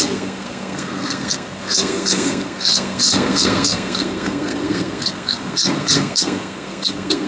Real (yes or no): no